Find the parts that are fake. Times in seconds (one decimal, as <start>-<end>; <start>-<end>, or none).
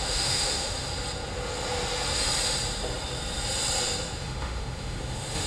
0.0-0.9; 4.2-5.5